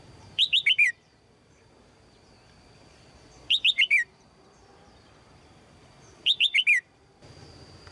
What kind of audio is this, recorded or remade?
remade